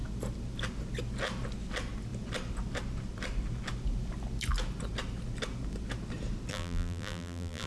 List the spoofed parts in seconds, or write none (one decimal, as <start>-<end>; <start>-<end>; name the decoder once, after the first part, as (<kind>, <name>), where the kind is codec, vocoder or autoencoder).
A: 6.5-7.7 (vocoder, BigVGAN v2)